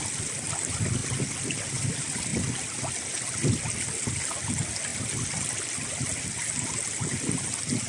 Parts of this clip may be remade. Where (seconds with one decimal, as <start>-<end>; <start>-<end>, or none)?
none